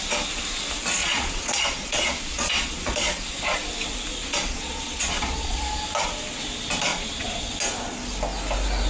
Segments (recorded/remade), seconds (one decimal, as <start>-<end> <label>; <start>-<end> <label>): 0.0-1.0 recorded; 1.0-3.7 remade; 3.7-4.2 recorded; 4.2-5.7 remade; 5.7-6.9 recorded; 6.9-7.5 remade; 7.5-8.9 recorded